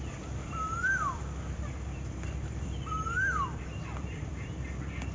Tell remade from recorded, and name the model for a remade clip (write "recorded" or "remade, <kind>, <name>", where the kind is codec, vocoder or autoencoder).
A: remade, vocoder, BigVGAN v2